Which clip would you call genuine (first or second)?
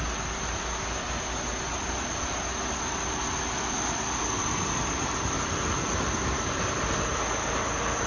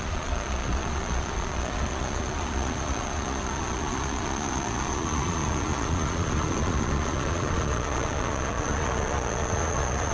first